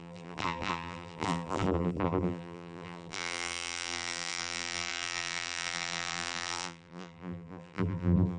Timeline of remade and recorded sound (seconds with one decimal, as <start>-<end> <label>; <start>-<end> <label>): 0.0-8.4 remade